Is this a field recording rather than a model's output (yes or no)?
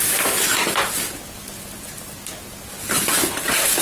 yes